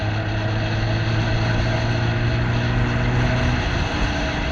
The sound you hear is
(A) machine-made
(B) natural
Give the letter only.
B